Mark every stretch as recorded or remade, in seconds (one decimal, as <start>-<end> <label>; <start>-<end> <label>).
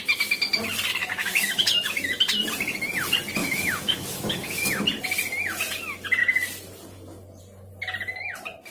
0.0-1.0 recorded; 1.0-1.9 remade; 1.9-3.4 recorded; 3.4-4.8 remade; 4.8-8.7 recorded